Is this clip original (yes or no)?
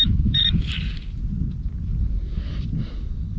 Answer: yes